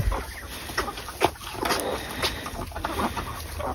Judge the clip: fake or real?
real